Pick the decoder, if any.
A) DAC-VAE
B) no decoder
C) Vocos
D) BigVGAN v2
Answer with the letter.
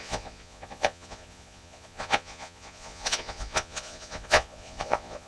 C